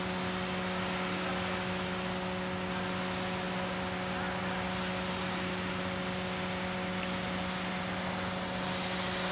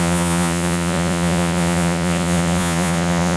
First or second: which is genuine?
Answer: first